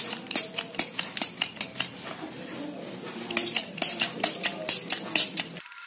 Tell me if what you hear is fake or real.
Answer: fake